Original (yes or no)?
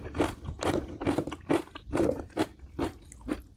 yes